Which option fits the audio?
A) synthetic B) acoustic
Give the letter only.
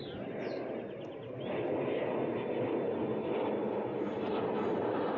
B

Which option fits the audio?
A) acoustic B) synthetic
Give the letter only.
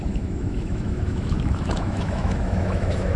B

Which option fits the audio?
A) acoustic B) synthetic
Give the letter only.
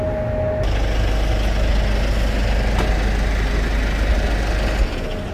A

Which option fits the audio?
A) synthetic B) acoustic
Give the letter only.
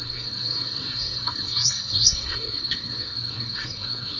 A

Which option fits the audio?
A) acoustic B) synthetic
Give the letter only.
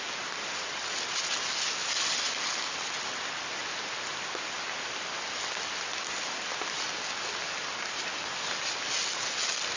A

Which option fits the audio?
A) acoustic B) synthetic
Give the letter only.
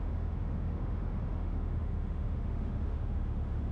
B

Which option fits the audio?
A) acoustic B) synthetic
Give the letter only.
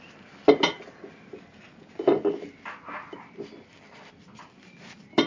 A